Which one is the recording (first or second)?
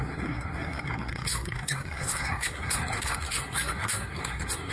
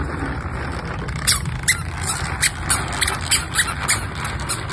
second